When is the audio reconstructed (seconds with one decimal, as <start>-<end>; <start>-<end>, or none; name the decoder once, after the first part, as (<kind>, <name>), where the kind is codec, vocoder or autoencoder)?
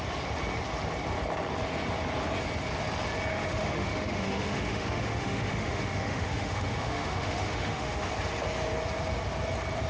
3.3-8.1 (autoencoder, DAC-VAE)